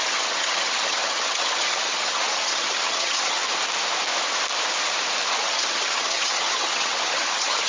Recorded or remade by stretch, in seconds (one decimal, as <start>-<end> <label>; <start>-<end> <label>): 0.0-3.4 remade; 3.4-5.3 recorded; 5.3-7.7 remade